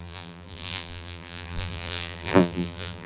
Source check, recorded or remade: remade